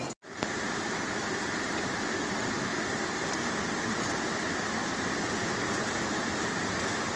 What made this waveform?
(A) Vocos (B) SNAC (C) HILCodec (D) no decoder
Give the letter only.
D